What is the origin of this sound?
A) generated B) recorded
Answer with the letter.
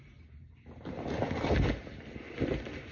B